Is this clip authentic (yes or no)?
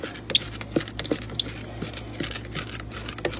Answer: yes